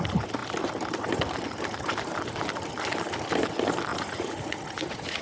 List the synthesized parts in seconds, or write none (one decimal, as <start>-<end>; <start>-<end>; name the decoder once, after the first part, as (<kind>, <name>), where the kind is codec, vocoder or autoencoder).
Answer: 3.9-5.2 (vocoder, Vocos)